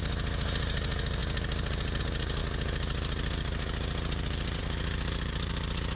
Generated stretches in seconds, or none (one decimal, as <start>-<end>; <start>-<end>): none